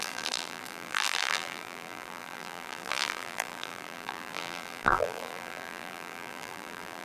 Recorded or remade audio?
remade